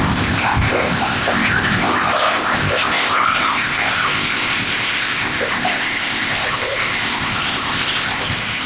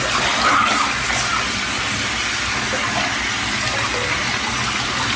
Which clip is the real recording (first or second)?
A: second